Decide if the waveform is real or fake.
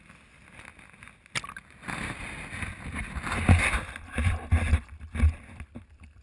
real